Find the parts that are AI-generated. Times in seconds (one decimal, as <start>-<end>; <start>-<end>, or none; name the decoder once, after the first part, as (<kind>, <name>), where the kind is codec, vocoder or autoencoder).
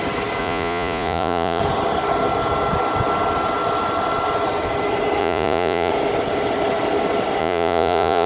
0.4-1.6 (vocoder, Vocos); 5.2-5.9; 7.4-8.3